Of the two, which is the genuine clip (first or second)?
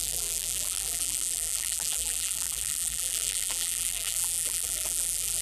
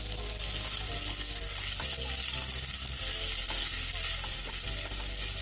second